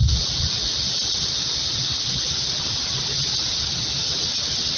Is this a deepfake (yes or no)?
no